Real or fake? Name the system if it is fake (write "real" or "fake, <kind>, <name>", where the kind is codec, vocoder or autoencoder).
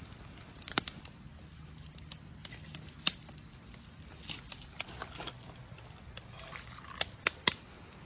real